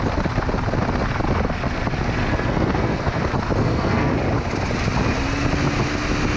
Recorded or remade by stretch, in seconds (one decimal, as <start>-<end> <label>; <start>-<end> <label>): 0.0-2.3 recorded; 2.3-3.2 remade; 3.2-3.6 recorded; 3.6-4.1 remade; 4.1-6.4 recorded